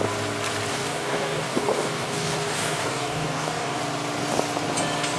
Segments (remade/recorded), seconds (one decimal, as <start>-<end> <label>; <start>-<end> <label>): 0.0-0.7 recorded; 0.7-3.8 remade; 3.8-5.2 recorded